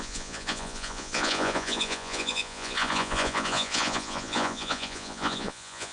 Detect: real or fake fake